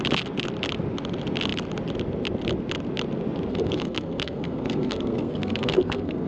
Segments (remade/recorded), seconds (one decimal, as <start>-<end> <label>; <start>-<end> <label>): 0.0-3.5 recorded; 3.5-6.3 remade